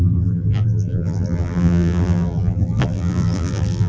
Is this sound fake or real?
fake